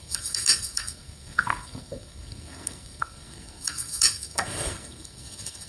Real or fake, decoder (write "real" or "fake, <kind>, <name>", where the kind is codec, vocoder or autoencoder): fake, codec, SNAC